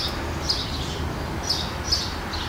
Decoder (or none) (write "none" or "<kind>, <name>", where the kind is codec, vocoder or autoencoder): none